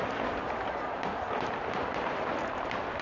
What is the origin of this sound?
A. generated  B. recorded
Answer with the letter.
B